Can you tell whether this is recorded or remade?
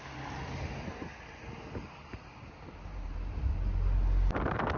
recorded